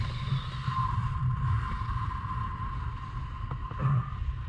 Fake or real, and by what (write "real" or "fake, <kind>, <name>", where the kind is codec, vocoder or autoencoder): real